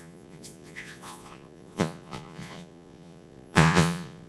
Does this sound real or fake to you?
fake